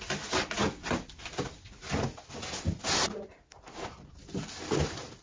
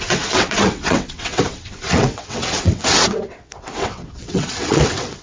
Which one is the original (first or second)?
first